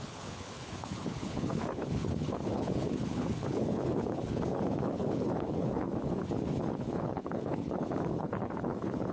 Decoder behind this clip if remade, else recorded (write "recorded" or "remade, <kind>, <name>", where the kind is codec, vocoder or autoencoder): remade, codec, HILCodec